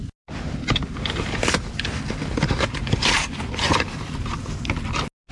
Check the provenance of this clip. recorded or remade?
recorded